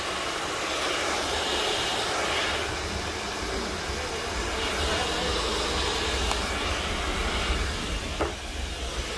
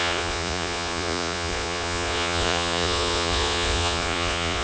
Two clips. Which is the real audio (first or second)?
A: first